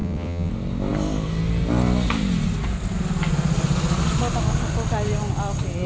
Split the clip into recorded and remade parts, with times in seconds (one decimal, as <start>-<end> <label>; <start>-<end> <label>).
0.0-0.5 remade; 0.5-5.9 recorded